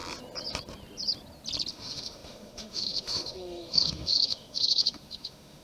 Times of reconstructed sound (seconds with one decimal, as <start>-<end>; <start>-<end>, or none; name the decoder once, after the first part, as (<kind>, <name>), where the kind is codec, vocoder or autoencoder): 1.7-5.6 (autoencoder, DAC-VAE)